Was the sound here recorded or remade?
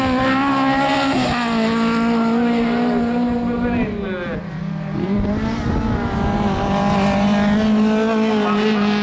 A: recorded